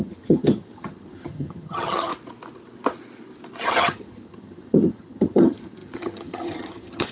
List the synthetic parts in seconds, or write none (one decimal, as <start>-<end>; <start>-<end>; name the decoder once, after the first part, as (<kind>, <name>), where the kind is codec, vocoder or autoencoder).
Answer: 0.0-2.1 (vocoder, HiFi-GAN); 3.7-7.1

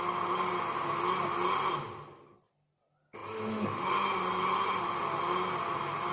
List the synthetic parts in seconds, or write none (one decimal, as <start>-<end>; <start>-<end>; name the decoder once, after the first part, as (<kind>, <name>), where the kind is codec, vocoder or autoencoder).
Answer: none

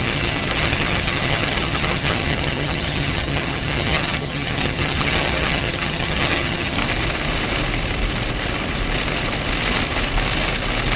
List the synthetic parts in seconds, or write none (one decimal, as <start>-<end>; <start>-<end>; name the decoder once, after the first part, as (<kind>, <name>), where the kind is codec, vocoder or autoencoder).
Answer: 0.0-6.8 (vocoder, HiFi-GAN)

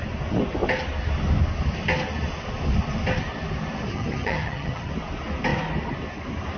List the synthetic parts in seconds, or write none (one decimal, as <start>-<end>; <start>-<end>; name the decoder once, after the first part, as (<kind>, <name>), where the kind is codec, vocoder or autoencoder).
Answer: 3.9-4.9 (vocoder, HiFi-GAN)

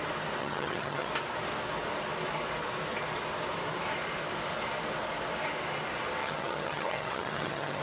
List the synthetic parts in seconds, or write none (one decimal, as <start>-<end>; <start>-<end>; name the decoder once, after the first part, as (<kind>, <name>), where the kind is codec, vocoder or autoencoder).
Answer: 0.4-1.1 (vocoder, HiFi-GAN); 6.2-7.8